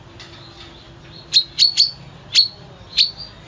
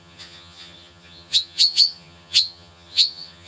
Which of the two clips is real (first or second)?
first